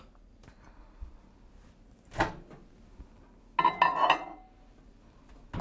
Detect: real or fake real